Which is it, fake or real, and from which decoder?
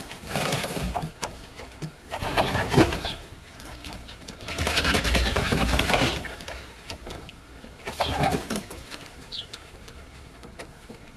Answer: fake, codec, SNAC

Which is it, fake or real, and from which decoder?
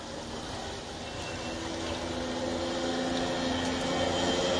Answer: real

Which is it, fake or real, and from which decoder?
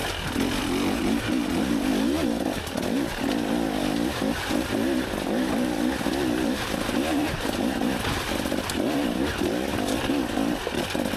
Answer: real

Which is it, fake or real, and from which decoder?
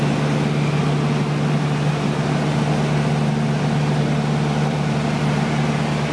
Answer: real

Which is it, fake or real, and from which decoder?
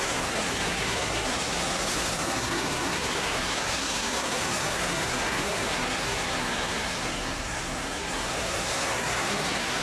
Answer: fake, codec, SNAC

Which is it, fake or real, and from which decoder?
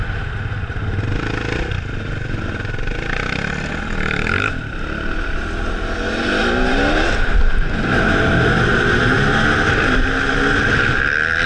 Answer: real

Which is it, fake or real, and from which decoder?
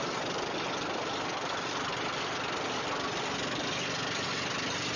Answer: real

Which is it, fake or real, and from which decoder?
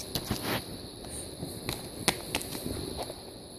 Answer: real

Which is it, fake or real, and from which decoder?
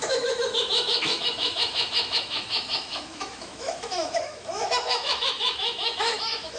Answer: fake, autoencoder, DAC-VAE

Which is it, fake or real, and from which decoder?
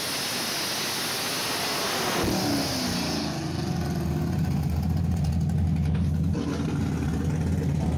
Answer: real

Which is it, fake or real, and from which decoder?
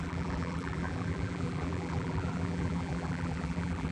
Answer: fake, vocoder, BigVGAN v2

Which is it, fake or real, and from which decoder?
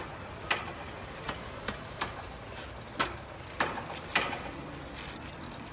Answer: real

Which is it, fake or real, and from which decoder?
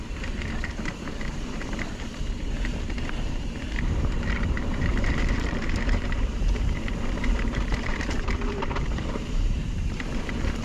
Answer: fake, vocoder, BigVGAN v2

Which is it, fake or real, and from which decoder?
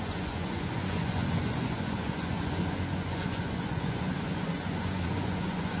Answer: fake, vocoder, Vocos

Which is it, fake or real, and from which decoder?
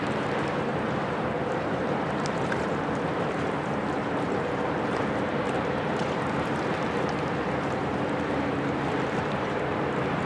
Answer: fake, vocoder, BigVGAN v2